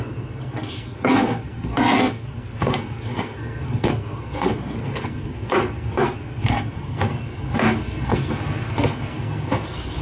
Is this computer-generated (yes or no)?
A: yes